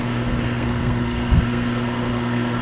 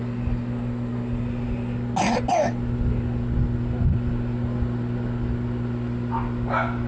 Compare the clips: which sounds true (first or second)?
second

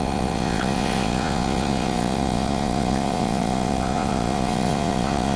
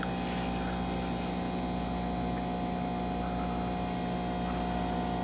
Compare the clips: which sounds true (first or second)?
second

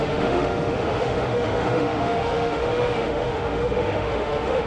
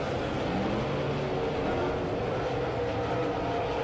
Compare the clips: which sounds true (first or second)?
second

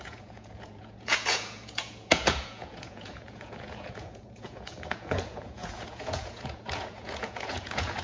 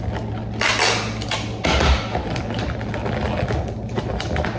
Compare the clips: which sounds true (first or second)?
second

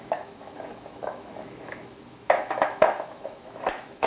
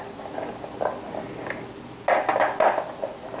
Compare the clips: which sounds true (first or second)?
second